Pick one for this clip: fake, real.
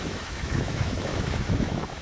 fake